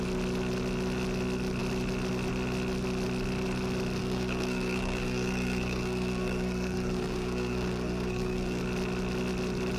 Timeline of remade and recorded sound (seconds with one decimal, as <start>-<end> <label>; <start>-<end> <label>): 0.0-4.0 recorded; 4.0-8.6 remade; 8.6-9.8 recorded